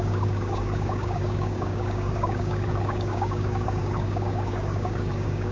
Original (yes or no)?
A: no